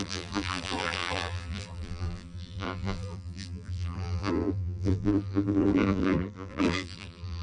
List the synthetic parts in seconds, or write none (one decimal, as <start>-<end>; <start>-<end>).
0.0-7.4